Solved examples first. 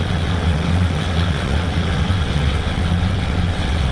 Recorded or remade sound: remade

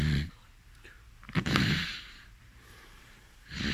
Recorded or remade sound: remade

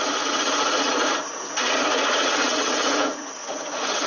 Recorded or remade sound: remade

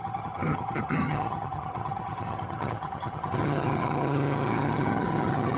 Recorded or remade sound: remade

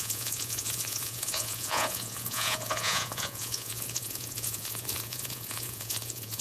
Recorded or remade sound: remade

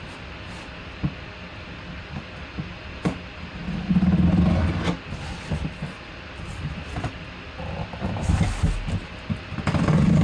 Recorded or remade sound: recorded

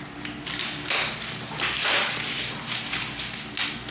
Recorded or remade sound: recorded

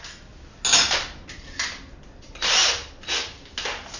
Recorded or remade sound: recorded